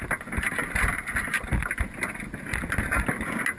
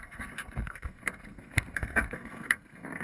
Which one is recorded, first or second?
first